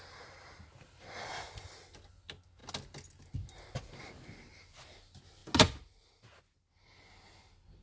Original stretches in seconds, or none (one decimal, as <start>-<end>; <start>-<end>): 0.0-7.8